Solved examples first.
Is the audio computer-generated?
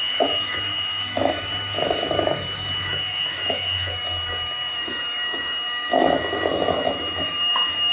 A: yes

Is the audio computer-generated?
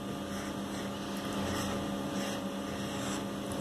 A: no